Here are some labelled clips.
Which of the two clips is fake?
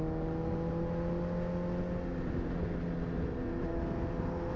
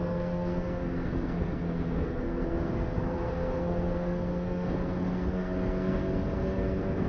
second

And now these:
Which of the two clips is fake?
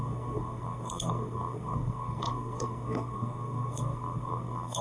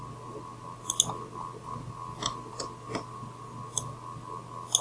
first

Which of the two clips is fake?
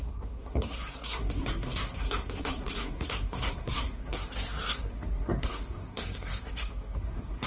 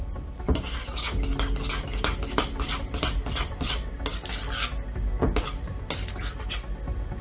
first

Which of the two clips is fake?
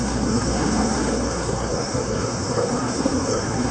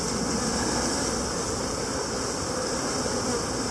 first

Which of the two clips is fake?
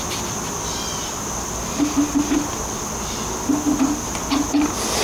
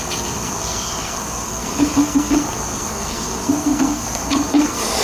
second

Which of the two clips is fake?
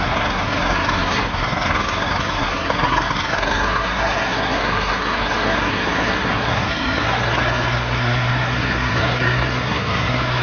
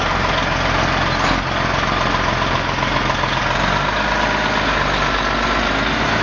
first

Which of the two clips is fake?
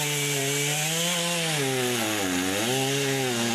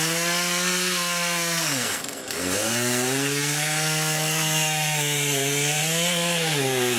second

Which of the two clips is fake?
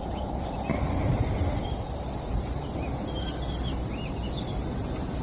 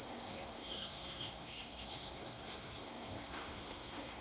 second